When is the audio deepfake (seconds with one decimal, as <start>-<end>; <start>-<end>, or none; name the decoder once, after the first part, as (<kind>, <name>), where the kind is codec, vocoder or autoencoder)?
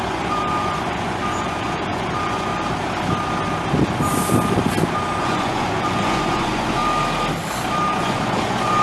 0.0-2.5 (vocoder, Vocos); 5.2-6.8; 7.9-8.8